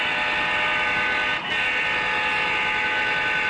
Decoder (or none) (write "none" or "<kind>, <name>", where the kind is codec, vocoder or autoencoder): none